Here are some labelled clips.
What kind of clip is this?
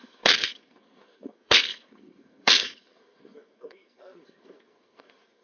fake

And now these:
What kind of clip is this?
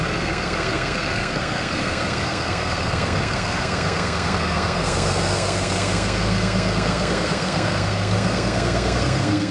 fake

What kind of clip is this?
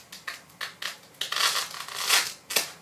real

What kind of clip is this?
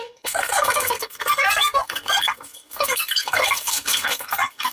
fake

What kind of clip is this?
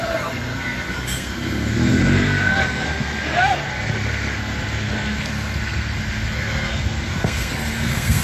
fake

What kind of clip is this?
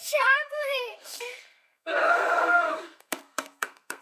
fake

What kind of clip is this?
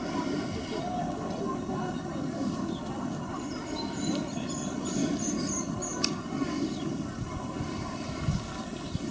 real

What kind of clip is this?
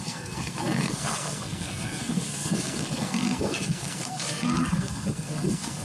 fake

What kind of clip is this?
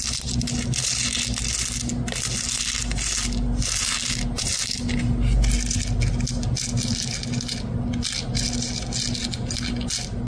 real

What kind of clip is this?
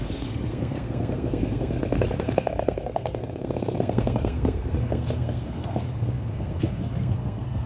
fake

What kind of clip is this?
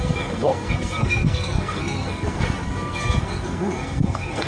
fake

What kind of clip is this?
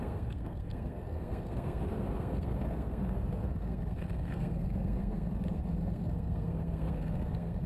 fake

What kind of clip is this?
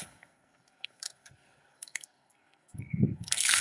fake